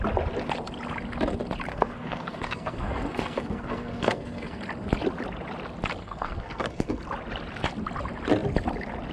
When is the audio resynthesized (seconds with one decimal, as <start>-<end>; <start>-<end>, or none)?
1.7-4.6; 6.0-7.0